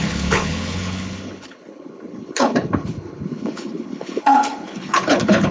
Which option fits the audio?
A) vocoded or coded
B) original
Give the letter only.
A